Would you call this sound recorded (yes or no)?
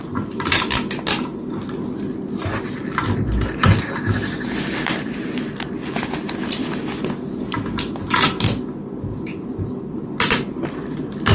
yes